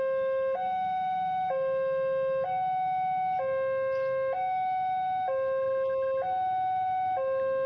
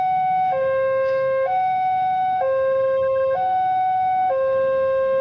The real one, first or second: first